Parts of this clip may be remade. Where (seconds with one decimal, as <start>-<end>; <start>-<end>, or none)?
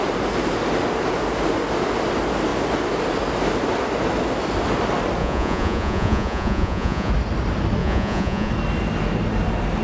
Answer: 5.2-7.1; 7.8-8.5